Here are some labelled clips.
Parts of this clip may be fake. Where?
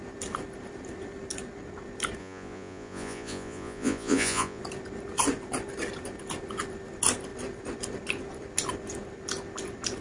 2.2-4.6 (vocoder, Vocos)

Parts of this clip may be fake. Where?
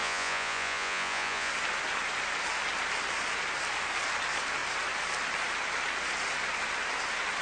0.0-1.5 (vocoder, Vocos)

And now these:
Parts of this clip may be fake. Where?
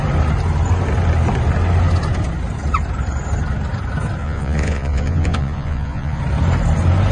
4.2-6.2 (vocoder, Vocos)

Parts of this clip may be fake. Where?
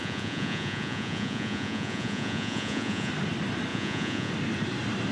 0.0-3.1 (vocoder, Vocos); 3.7-4.3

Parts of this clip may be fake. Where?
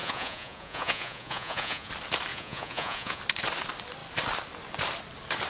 0.0-1.9 (vocoder, Vocos); 2.3-3.2